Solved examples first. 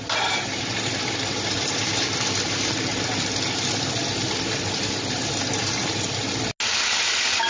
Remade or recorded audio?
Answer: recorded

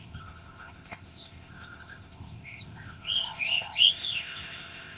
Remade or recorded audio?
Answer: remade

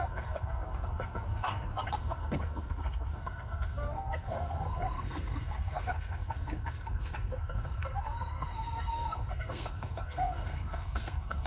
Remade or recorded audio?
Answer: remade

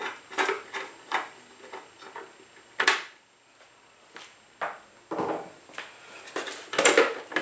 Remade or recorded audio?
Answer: recorded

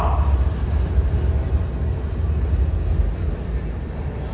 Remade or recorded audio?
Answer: recorded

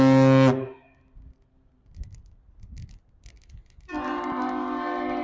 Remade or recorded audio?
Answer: recorded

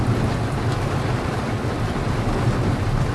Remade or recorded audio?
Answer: recorded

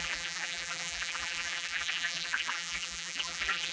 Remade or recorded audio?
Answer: remade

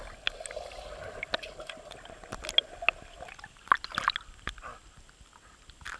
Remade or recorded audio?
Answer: recorded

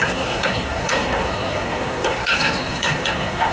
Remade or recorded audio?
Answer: remade